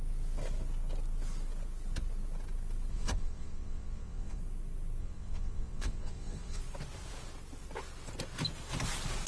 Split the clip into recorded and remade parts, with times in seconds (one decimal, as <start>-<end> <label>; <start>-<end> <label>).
0.0-2.9 recorded; 2.9-4.4 remade; 4.4-5.0 recorded; 5.0-6.6 remade; 6.6-9.3 recorded